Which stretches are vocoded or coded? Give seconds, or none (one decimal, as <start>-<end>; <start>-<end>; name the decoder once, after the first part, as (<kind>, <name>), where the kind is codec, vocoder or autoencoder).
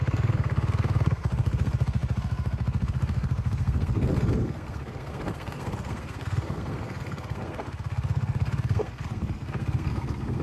0.0-10.4 (codec, SNAC)